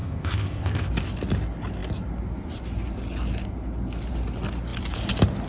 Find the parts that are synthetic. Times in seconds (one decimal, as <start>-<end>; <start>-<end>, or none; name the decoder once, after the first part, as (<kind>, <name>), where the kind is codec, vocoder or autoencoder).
0.0-0.9 (codec, ZipCodec)